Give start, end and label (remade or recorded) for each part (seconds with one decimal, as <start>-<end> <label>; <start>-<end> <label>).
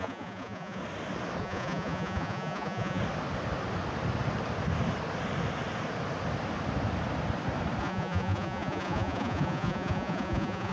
0.0-0.8 remade; 0.8-1.4 recorded; 1.4-3.0 remade; 3.0-7.8 recorded; 7.8-10.7 remade